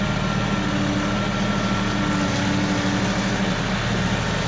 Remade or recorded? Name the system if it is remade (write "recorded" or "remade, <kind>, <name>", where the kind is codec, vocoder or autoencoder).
recorded